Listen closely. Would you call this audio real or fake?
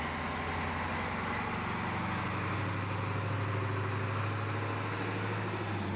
real